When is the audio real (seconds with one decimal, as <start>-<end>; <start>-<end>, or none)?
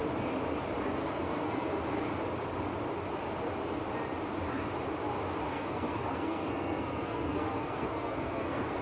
0.0-1.0; 1.8-5.5